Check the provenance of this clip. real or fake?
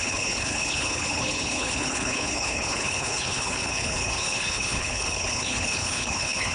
fake